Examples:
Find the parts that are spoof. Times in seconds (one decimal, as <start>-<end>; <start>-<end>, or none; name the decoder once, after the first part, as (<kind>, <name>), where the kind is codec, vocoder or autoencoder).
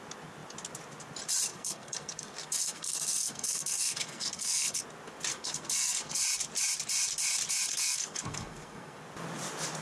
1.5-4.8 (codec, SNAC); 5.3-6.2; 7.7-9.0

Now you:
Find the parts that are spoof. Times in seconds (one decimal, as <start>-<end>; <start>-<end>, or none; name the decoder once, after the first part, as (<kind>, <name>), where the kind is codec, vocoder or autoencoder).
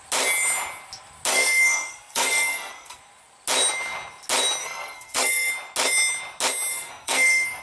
1.3-3.0 (codec, SNAC); 4.6-5.5; 6.7-7.6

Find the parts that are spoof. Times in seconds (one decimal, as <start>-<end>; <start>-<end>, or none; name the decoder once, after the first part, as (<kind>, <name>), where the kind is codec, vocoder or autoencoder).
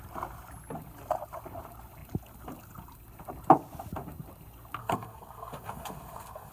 4.8-6.5 (codec, SNAC)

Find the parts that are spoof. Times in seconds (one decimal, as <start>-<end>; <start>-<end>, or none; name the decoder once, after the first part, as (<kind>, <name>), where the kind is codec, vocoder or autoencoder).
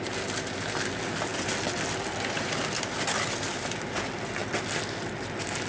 none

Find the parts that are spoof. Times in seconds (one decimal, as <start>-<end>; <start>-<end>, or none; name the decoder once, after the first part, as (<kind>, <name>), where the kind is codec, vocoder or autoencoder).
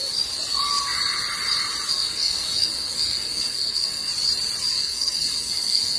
1.9-4.1 (codec, SNAC); 4.7-6.0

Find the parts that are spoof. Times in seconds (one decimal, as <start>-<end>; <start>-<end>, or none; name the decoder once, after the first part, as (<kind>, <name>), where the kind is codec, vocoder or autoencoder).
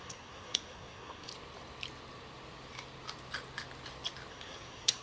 0.0-1.3 (codec, SNAC); 4.3-5.0